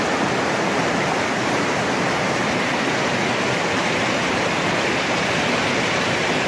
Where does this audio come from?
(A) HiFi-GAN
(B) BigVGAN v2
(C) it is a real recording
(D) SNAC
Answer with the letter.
B